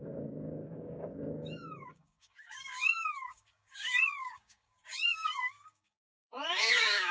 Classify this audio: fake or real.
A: fake